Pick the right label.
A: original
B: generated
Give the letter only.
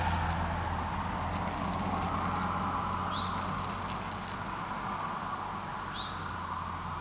A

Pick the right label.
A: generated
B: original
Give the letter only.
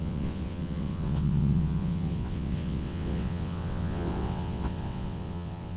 A